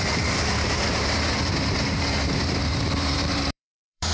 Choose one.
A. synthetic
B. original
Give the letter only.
A